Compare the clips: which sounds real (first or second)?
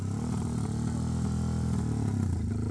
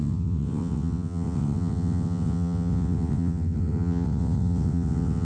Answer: first